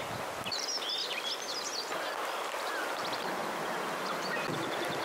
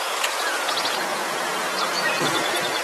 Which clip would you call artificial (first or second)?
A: second